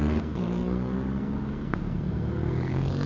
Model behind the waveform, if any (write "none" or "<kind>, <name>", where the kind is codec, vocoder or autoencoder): codec, SNAC